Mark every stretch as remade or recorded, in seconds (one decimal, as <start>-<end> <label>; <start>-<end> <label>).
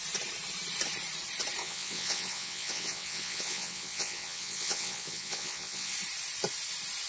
0.0-1.6 recorded; 1.6-5.9 remade; 5.9-7.1 recorded